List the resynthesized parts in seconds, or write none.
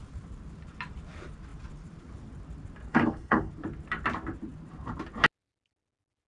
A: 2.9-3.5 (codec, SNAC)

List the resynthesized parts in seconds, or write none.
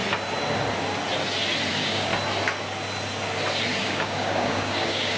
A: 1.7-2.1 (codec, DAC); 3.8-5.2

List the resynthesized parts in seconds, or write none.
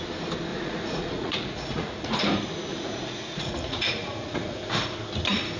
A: 0.5-2.2 (vocoder, Vocos); 2.7-4.6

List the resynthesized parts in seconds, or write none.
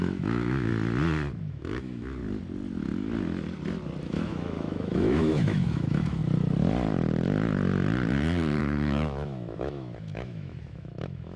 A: 0.0-0.7 (autoencoder, DAC-VAE); 1.4-2.2; 4.0-6.2; 8.6-11.4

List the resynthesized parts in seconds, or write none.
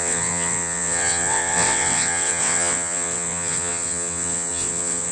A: 0.0-5.1 (vocoder, WaveNeXt)